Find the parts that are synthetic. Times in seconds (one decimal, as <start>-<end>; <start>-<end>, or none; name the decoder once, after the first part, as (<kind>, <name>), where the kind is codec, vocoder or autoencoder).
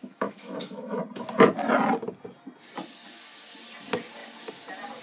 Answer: 0.0-1.0 (autoencoder, DAC-VAE)